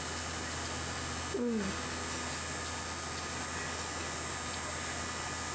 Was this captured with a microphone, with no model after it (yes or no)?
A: yes